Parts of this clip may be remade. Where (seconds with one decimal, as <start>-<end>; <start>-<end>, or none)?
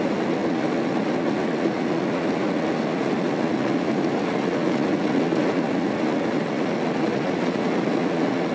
0.0-8.5